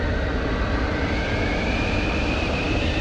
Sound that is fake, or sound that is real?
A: real